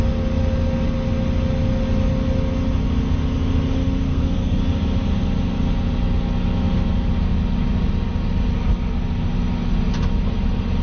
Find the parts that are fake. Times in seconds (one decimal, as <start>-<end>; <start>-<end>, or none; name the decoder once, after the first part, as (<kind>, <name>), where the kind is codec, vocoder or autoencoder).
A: 4.1-4.6 (codec, SNAC)